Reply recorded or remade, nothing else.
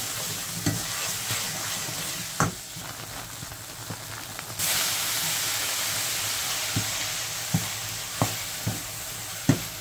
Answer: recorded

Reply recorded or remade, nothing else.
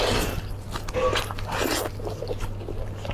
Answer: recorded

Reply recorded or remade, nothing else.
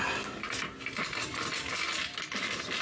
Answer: recorded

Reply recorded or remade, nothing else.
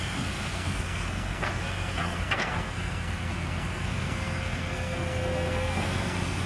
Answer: remade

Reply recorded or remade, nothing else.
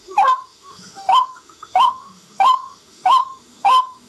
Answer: remade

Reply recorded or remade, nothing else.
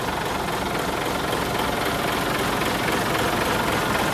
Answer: recorded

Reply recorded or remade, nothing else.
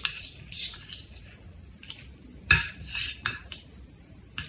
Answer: remade